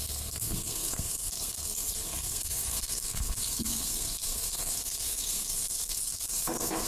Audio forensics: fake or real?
fake